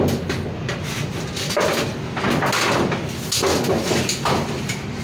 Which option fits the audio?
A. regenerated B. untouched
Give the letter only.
B